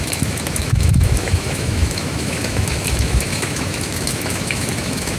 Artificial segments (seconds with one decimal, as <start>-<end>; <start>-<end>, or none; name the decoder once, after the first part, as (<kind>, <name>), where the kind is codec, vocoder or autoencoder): 0.0-5.2 (autoencoder, DAC-VAE)